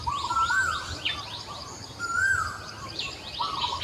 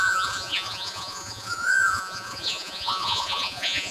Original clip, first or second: first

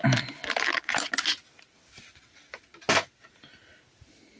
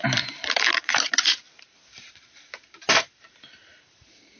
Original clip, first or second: first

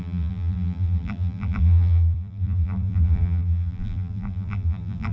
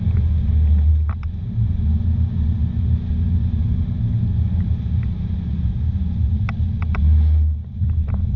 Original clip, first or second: second